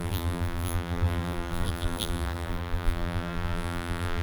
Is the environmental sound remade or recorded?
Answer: remade